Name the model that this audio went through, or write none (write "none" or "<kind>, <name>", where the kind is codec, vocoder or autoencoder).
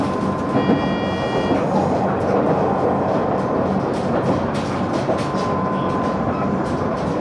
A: none